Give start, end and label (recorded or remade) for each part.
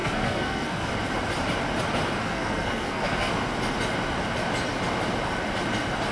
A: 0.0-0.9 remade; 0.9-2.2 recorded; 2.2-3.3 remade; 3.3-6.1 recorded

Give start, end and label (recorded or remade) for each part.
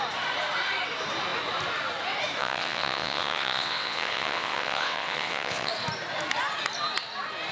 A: 0.0-2.4 recorded; 2.4-5.7 remade; 5.7-7.5 recorded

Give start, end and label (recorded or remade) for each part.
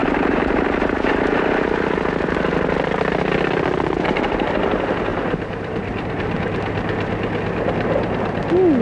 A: 0.0-1.5 remade; 1.5-5.1 recorded; 5.1-6.2 remade; 6.2-8.8 recorded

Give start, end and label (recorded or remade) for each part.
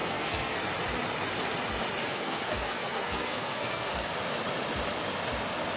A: 0.0-0.6 remade; 0.6-2.0 recorded; 2.0-4.1 remade; 4.1-5.8 recorded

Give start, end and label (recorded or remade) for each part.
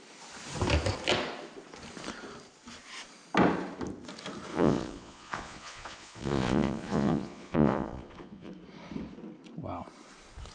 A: 0.0-4.5 recorded; 4.5-8.5 remade; 8.5-10.5 recorded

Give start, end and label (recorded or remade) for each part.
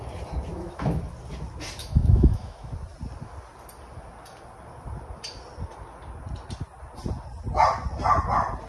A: 0.0-0.5 recorded; 0.5-1.0 remade; 1.0-1.8 recorded; 1.8-2.7 remade; 2.7-8.7 recorded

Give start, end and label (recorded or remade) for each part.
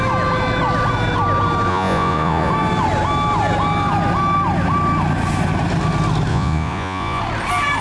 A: 0.0-1.7 recorded; 1.7-2.5 remade; 2.5-6.3 recorded; 6.3-7.2 remade; 7.2-7.8 recorded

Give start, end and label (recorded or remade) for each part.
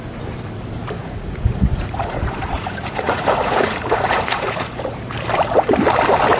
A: 0.0-1.0 recorded; 1.0-4.8 remade; 4.8-6.4 recorded